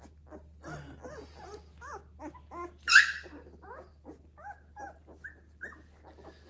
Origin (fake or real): real